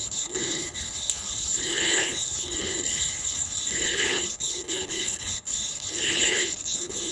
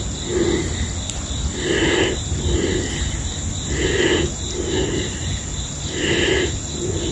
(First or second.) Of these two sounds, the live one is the second